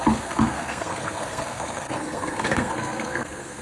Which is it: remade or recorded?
remade